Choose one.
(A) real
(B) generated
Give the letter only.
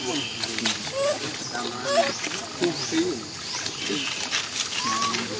A